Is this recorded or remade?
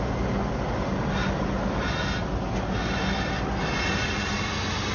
recorded